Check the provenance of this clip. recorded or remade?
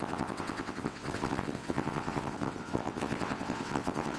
remade